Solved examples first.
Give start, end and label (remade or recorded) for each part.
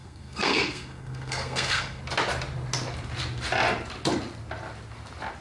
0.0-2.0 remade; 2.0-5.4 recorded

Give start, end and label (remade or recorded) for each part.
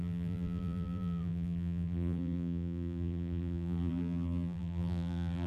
0.0-5.5 remade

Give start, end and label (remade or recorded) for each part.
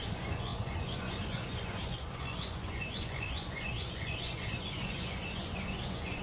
0.0-6.2 remade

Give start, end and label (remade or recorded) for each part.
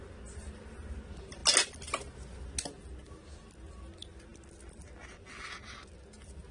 0.0-6.5 recorded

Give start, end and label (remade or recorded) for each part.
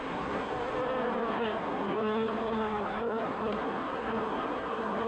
0.0-0.5 remade; 0.5-1.3 recorded; 1.3-5.1 remade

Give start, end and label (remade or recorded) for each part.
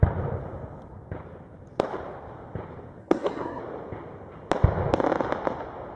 0.0-3.0 recorded; 3.0-3.6 remade; 3.6-6.0 recorded